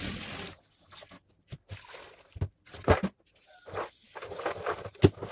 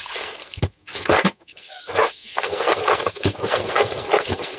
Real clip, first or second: first